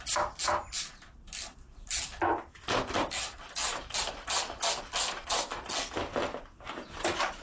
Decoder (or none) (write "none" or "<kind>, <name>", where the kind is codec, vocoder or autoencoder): none